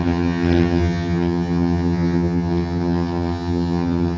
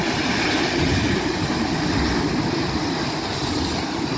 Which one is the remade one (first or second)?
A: first